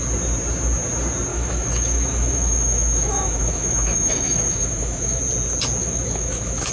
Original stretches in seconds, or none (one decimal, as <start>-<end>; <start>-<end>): 0.0-1.3; 5.2-5.8